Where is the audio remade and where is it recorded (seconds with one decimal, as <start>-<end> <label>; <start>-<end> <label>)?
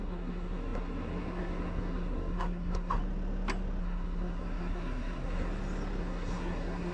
0.0-3.0 remade; 3.0-3.8 recorded; 3.8-5.5 remade; 5.5-6.0 recorded; 6.0-6.9 remade